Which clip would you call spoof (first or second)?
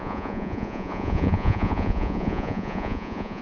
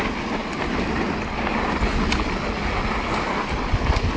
first